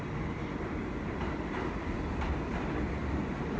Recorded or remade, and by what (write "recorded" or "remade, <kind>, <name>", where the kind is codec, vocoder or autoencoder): recorded